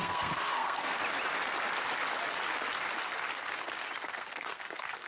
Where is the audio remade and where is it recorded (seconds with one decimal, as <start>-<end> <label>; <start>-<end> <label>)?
0.0-1.0 remade; 1.0-4.1 recorded; 4.1-5.1 remade

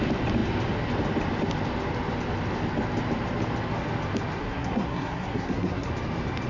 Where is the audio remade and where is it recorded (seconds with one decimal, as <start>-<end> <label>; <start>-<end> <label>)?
0.0-4.4 recorded; 4.4-5.9 remade; 5.9-6.5 recorded

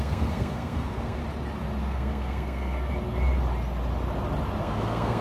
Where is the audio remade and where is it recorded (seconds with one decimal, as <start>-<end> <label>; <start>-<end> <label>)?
0.0-1.2 remade; 1.2-1.8 recorded; 1.8-2.9 remade; 2.9-4.6 recorded; 4.6-5.2 remade

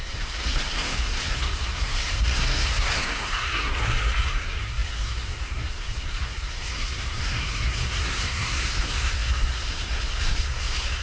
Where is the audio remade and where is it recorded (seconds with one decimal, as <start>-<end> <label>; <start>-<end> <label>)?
0.0-11.0 remade

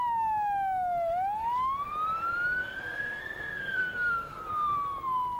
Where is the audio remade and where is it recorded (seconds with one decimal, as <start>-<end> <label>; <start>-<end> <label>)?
0.0-2.6 recorded; 2.6-4.4 remade; 4.4-5.4 recorded

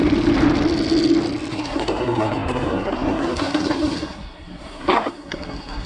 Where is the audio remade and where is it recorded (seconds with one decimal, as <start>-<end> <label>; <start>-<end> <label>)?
0.0-1.5 recorded; 1.5-5.9 remade

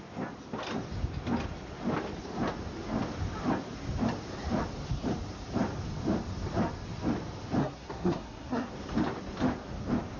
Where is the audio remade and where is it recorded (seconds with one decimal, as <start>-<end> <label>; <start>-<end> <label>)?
0.0-7.6 recorded; 7.6-8.7 remade; 8.7-10.2 recorded

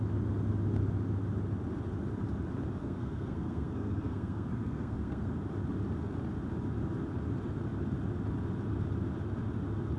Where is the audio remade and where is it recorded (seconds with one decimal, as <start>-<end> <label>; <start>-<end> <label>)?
0.0-2.8 recorded; 2.8-5.3 remade; 5.3-10.0 recorded